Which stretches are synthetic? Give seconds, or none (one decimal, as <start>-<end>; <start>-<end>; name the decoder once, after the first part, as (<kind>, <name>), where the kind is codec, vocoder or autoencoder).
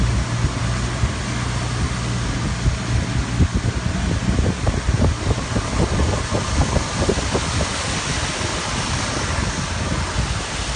none